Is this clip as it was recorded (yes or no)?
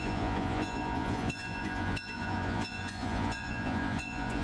no